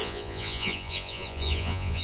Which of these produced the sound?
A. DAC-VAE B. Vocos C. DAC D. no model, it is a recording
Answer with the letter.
B